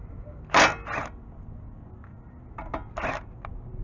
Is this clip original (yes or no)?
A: yes